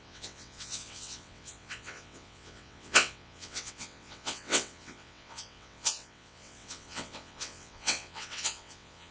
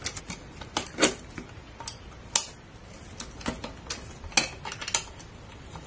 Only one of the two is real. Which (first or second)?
second